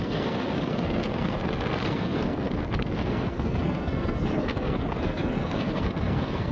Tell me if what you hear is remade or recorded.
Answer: remade